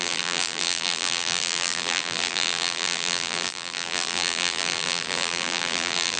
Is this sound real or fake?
fake